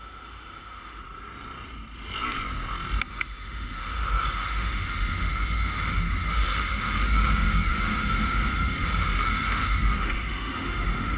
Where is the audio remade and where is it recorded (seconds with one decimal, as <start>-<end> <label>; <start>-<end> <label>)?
0.0-1.0 remade; 1.0-3.1 recorded; 3.1-11.2 remade